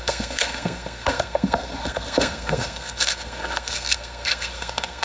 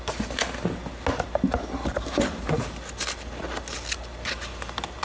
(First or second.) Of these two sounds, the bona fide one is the second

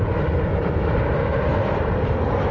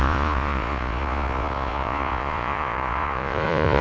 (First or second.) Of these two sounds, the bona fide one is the first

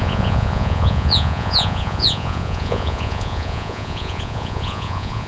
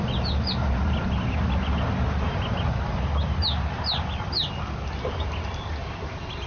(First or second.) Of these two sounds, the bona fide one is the second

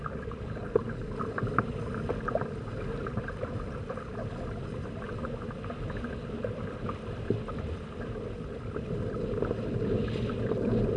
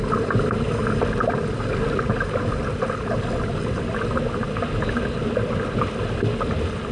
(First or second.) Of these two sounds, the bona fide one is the second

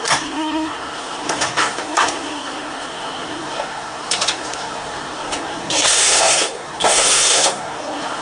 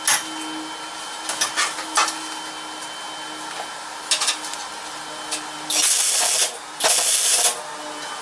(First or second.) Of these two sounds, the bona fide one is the second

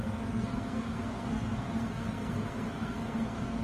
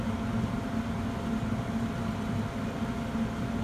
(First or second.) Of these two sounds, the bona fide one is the second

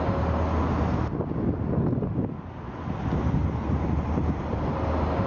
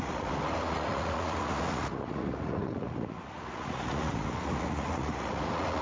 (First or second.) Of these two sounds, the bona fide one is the first